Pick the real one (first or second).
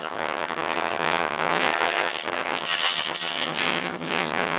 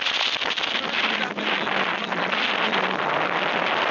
second